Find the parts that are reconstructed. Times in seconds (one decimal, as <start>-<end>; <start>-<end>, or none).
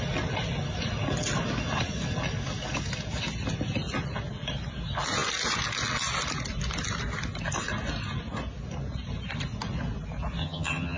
10.4-11.0